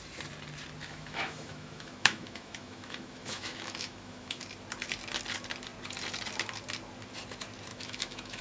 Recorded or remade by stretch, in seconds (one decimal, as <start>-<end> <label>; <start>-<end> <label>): 0.0-0.8 recorded; 0.8-4.4 remade; 4.4-7.7 recorded; 7.7-8.4 remade